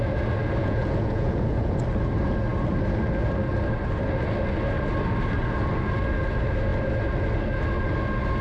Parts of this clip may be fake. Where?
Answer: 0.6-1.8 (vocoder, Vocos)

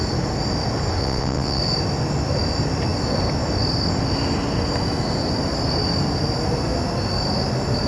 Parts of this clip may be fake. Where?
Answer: 1.0-1.6 (vocoder, WaveNeXt)